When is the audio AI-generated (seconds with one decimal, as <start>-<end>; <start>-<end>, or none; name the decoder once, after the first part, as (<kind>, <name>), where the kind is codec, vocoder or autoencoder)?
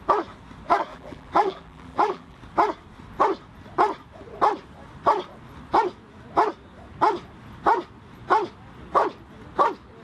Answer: 0.9-2.4 (vocoder, BigVGAN v2)